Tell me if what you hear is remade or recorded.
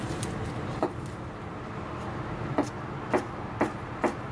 remade